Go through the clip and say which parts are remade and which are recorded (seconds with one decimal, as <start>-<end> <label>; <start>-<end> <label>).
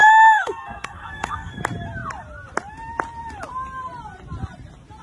0.0-1.6 remade; 1.6-5.0 recorded